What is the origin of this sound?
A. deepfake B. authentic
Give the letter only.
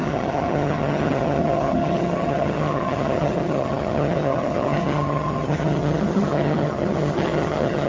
A